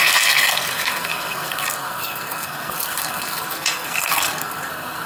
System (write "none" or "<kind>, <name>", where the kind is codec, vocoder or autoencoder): codec, SNAC